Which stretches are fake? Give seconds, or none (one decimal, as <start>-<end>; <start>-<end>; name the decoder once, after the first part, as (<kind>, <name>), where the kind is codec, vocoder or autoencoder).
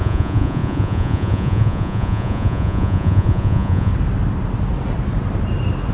0.0-3.9 (vocoder, Vocos)